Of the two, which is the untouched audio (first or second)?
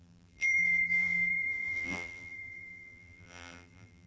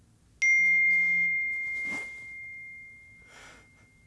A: second